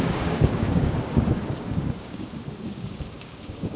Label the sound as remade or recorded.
remade